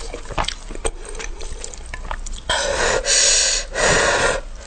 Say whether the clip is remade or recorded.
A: recorded